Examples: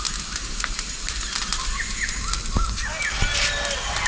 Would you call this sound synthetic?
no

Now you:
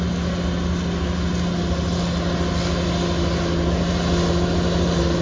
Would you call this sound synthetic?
no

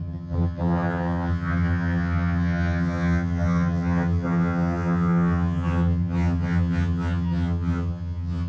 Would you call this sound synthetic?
yes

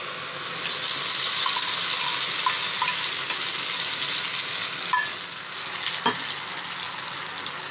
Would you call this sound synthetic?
no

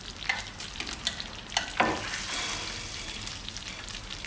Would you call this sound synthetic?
no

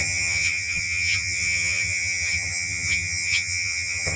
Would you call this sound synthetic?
yes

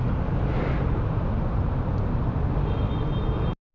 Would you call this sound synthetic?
no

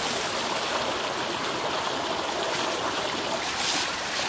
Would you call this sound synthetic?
no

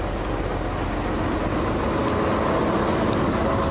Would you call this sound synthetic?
no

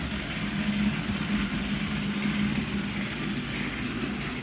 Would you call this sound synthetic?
no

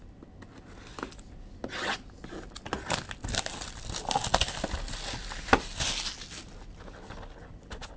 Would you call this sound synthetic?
no